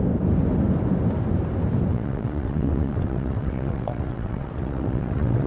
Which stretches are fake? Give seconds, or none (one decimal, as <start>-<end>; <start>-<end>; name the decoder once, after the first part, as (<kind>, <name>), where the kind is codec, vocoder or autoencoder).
1.9-5.5 (vocoder, WaveNeXt)